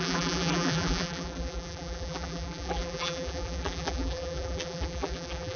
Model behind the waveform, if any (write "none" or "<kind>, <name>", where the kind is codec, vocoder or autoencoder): vocoder, BigVGAN v2